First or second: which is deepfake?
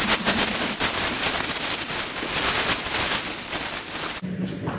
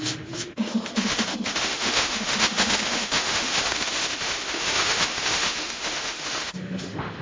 second